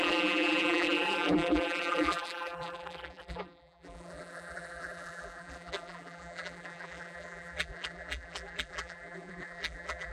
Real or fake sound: fake